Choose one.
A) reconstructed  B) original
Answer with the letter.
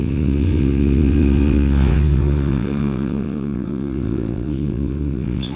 A